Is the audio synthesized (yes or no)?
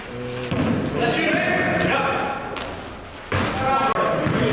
no